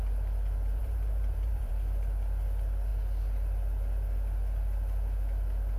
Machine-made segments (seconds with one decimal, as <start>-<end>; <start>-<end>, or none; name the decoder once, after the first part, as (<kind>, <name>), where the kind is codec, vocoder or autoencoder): 0.8-1.7 (vocoder, BigVGAN v2)